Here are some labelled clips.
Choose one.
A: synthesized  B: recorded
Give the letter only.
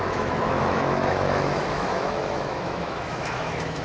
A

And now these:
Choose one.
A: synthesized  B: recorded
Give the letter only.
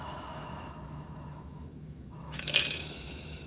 A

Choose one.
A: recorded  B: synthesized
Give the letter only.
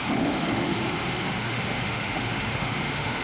B